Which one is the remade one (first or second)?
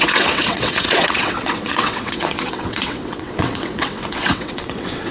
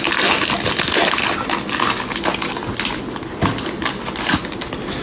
first